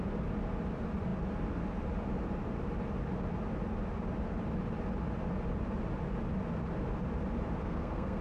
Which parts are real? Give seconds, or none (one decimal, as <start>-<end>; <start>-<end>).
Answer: 0.0-7.6